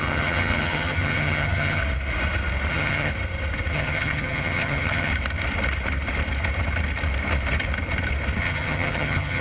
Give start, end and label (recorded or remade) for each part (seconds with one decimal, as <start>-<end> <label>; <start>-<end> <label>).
0.0-1.8 remade; 1.8-2.7 recorded; 2.7-3.1 remade; 3.1-3.7 recorded; 3.7-5.1 remade; 5.1-8.4 recorded; 8.4-9.4 remade